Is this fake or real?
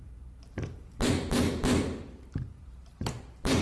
fake